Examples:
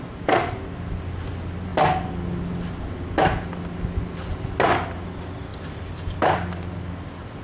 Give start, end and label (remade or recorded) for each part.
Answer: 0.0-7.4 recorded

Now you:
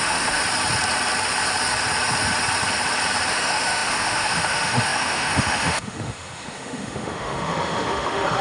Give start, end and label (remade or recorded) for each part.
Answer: 0.0-0.4 remade; 0.4-3.3 recorded; 3.3-8.4 remade

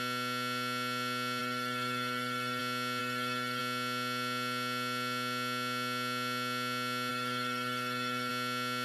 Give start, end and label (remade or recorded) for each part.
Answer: 0.0-1.4 recorded; 1.4-2.6 remade; 2.6-3.0 recorded; 3.0-3.6 remade; 3.6-7.1 recorded; 7.1-8.3 remade; 8.3-8.8 recorded

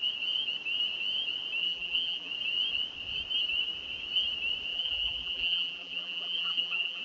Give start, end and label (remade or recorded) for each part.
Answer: 0.0-1.6 recorded; 1.6-2.3 remade; 2.3-4.7 recorded; 4.7-7.0 remade

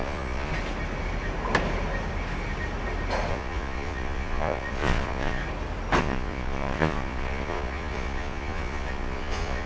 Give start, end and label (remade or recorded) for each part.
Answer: 0.0-0.5 remade; 0.5-3.3 recorded; 3.3-5.4 remade; 5.4-6.0 recorded; 6.0-9.7 remade